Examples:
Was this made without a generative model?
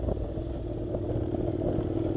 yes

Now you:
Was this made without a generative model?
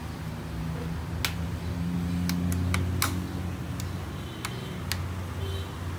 yes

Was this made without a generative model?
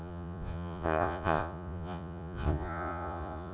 no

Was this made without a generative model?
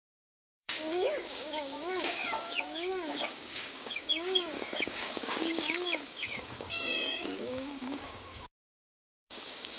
no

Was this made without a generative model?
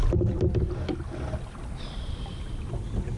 yes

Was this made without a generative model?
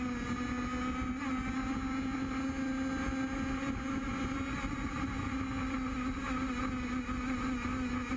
yes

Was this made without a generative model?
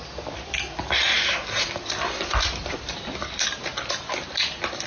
no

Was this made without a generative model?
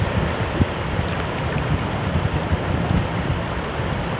no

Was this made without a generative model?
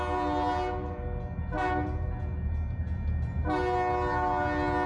yes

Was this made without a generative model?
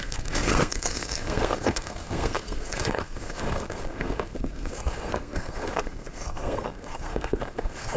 no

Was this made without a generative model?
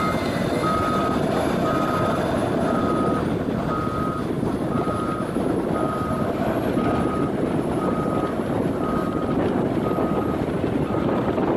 yes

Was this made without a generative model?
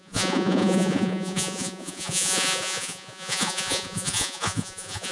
no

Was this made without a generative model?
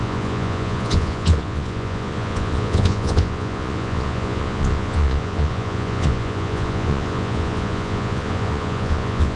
no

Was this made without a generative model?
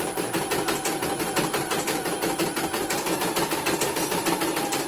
yes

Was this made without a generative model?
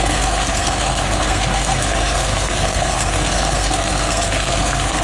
no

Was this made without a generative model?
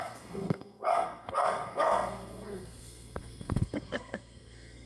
no